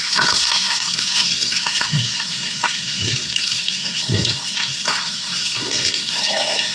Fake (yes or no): yes